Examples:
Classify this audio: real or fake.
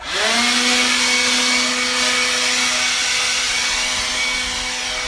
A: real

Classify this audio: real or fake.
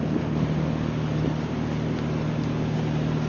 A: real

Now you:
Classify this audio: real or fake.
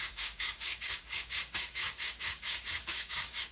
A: fake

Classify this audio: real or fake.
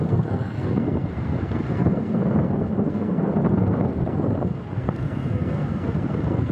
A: fake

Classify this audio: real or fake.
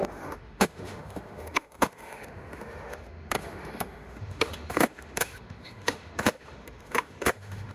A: fake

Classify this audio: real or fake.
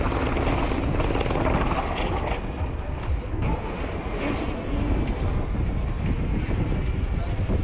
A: real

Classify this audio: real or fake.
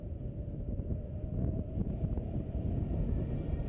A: real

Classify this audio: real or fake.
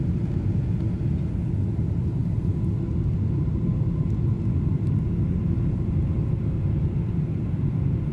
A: real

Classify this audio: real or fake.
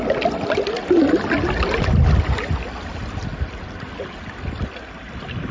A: real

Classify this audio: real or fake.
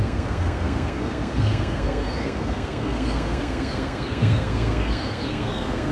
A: fake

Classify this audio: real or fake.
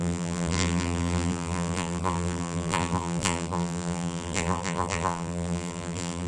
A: fake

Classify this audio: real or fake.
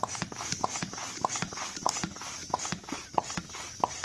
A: real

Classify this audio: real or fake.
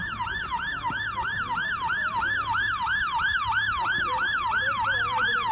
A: real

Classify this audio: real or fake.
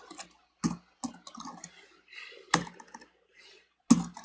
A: real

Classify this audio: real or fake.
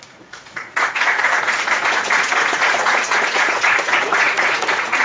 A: fake